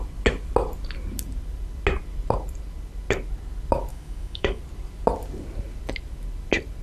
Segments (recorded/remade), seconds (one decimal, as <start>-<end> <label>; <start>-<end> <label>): 0.0-3.9 recorded; 3.9-4.6 remade; 4.6-6.8 recorded